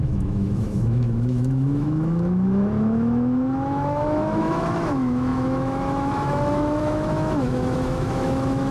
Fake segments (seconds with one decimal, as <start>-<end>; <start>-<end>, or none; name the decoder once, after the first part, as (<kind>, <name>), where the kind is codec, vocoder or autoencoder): 0.0-8.7 (autoencoder, DAC-VAE)